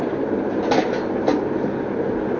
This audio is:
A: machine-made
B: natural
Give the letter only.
B